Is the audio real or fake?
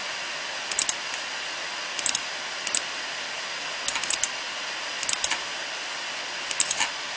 real